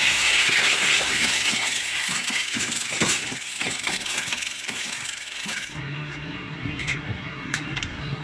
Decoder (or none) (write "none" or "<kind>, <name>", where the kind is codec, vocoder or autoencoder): codec, SNAC